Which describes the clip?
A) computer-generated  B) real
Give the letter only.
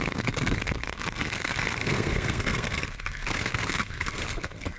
A